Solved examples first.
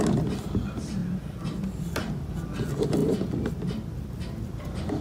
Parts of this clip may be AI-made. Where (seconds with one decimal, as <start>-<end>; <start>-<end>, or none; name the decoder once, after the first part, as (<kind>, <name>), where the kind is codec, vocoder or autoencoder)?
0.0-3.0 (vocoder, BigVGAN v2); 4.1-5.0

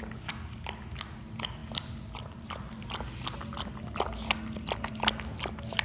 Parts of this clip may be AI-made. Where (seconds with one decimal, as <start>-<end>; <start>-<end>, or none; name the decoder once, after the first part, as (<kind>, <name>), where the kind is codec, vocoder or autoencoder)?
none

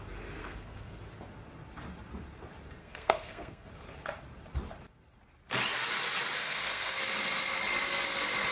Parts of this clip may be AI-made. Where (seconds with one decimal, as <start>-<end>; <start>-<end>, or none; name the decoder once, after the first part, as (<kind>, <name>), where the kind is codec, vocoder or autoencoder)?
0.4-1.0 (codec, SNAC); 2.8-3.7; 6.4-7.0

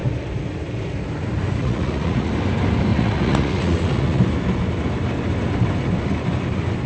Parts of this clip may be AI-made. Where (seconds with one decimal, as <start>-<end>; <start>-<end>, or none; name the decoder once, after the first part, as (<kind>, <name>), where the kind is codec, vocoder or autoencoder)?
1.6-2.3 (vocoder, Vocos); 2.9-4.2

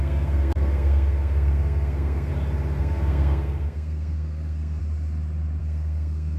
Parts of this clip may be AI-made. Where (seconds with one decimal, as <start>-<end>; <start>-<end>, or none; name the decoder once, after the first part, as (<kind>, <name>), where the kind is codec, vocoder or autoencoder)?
0.0-2.3 (codec, SNAC); 2.8-4.8; 5.6-6.4